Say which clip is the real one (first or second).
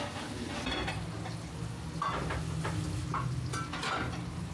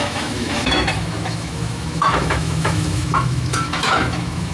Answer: first